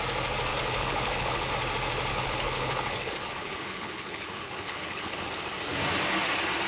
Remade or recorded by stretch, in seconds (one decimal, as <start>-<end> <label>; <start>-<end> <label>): 0.0-0.5 recorded; 0.5-1.5 remade; 1.5-2.1 recorded; 2.1-5.3 remade; 5.3-6.7 recorded